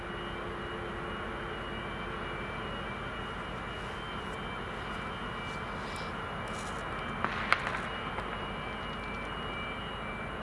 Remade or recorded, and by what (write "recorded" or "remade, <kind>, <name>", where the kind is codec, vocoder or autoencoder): recorded